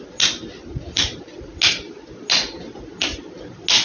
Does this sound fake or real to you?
real